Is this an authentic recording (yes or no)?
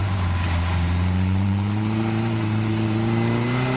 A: no